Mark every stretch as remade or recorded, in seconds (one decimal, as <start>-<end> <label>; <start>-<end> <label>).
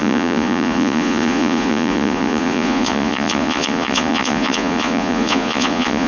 0.0-6.1 remade